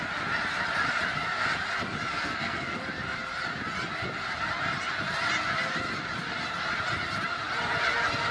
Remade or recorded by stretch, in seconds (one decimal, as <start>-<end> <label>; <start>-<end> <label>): 0.0-2.1 recorded; 2.1-2.8 remade; 2.8-8.3 recorded